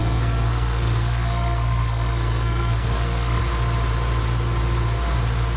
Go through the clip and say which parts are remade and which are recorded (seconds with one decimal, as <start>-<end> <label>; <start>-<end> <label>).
0.0-3.4 remade; 3.4-5.6 recorded